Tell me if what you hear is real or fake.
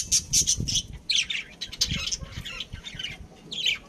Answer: real